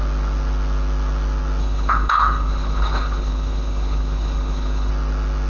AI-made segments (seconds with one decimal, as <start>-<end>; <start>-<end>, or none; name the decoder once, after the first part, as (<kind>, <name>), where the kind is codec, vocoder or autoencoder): 1.6-4.9 (codec, HILCodec)